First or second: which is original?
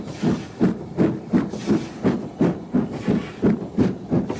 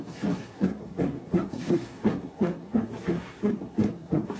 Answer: first